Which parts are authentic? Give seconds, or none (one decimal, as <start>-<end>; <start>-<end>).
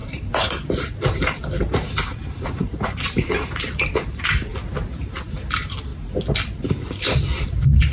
4.5-5.2; 5.9-6.7